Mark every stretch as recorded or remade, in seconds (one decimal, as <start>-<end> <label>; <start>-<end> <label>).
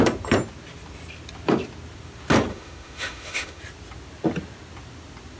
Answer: 0.0-2.5 recorded; 2.5-3.6 remade; 3.6-5.4 recorded